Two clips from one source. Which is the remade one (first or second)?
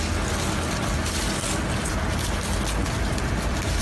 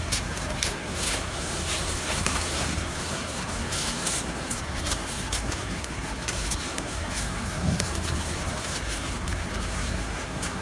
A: second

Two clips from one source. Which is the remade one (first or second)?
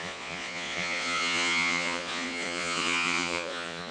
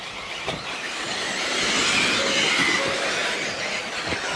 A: first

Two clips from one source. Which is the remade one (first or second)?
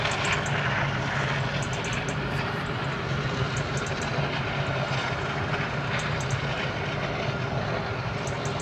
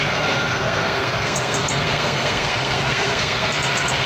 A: second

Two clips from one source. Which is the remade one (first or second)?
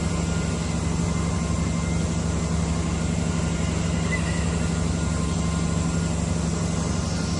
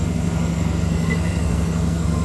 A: second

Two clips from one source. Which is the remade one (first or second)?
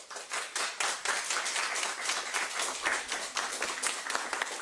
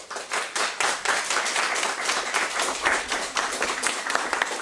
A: second